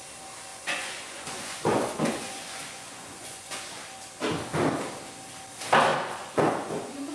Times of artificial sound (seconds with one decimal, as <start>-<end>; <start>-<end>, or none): 0.5-3.8; 5.9-7.1